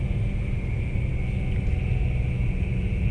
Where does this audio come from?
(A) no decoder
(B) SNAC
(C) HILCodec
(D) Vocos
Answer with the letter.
A